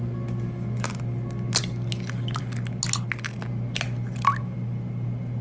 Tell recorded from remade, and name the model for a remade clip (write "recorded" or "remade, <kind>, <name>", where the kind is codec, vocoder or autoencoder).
recorded